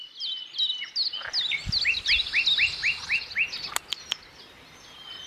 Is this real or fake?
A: real